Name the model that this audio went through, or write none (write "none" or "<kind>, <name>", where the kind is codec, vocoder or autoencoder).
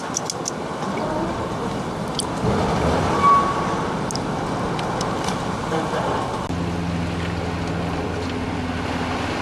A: none